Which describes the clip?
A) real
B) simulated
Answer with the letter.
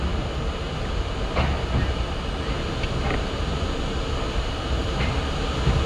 A